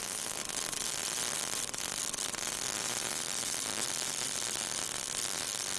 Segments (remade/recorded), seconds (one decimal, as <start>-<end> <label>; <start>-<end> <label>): 0.0-5.8 recorded